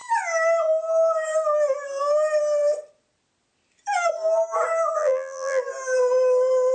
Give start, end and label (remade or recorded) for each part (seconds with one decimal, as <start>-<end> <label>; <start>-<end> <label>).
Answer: 0.0-5.0 recorded; 5.0-5.6 remade; 5.6-6.7 recorded